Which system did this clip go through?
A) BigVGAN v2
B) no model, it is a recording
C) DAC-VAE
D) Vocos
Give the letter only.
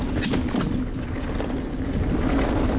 B